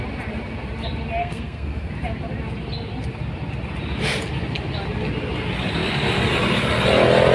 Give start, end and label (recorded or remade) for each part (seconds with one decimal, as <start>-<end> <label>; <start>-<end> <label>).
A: 0.0-1.2 recorded; 1.2-1.9 remade; 1.9-7.3 recorded